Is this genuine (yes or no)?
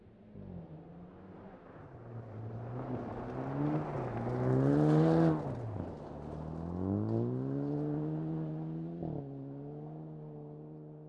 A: yes